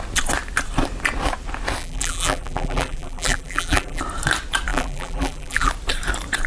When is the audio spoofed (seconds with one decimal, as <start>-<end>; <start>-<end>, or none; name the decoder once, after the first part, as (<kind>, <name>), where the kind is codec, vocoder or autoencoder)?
1.8-4.0 (vocoder, BigVGAN v2); 4.7-5.7